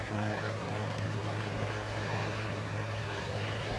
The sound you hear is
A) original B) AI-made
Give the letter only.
B